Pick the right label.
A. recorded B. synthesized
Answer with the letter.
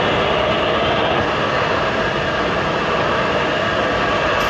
A